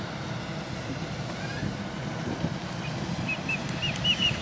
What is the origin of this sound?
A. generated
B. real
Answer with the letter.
B